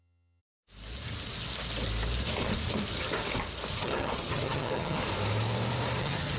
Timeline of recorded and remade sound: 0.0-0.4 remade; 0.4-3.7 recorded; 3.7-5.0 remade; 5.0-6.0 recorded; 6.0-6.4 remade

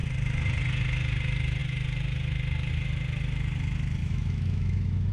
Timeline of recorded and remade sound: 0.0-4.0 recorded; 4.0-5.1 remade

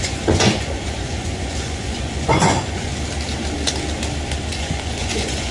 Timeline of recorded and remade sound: 0.0-2.9 remade; 2.9-4.5 recorded; 4.5-5.5 remade